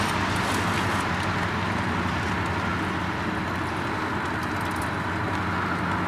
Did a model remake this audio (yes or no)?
no